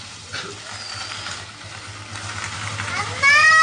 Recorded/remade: recorded